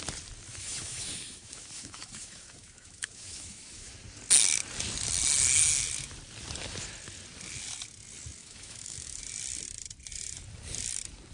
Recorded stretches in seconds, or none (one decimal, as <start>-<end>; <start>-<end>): 0.0-0.5; 3.9-8.4; 9.2-11.3

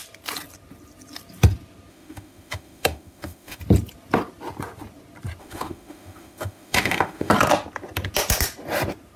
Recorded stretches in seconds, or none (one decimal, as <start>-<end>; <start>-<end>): 0.0-1.9; 3.6-5.4; 7.3-9.2

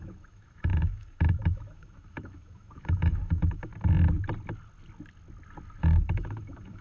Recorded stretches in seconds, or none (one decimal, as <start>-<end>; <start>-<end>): 3.7-5.8

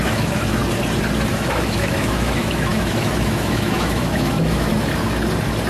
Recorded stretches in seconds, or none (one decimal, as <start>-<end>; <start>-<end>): 0.6-1.3; 4.7-5.7

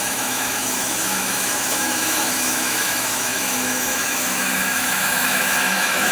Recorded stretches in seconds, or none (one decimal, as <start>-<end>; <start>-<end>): none

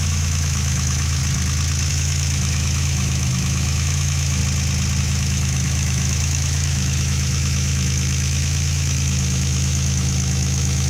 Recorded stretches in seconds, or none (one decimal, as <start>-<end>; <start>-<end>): 1.2-1.9; 4.4-5.0

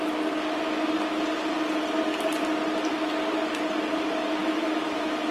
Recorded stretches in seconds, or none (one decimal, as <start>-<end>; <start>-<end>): 0.0-4.4